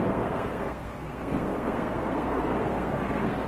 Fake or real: fake